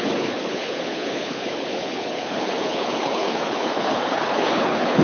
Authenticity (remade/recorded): remade